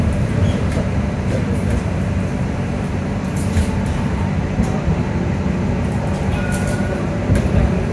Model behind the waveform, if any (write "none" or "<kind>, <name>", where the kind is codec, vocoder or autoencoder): vocoder, BigVGAN v2